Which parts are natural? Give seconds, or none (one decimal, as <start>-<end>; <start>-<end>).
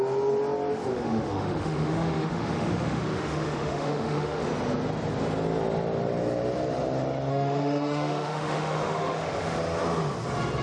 0.0-0.9; 4.4-7.3; 9.6-10.6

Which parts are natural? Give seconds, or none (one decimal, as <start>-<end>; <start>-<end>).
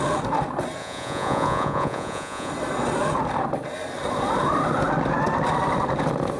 0.0-0.8; 2.5-6.4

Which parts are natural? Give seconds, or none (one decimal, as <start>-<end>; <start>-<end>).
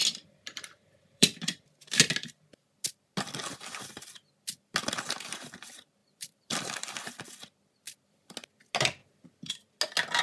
1.9-6.0; 6.9-10.2